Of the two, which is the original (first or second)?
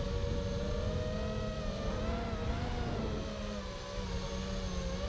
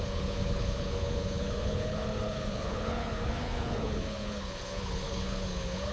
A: first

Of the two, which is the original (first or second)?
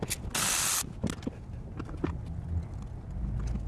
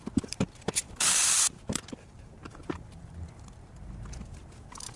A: first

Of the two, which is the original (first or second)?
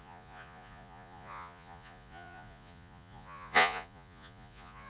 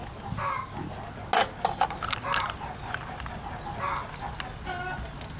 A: second